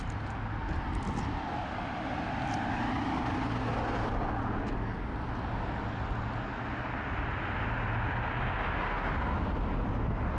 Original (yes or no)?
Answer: yes